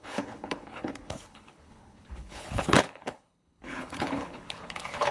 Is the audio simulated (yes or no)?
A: yes